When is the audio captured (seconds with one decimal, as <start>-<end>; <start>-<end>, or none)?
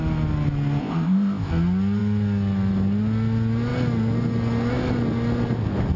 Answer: 0.0-0.8; 1.5-6.0